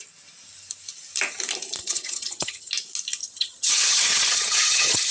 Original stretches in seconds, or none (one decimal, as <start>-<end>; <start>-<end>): 0.0-1.8; 2.7-3.2